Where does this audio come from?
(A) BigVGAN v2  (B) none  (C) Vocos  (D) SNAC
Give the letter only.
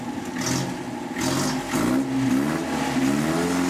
B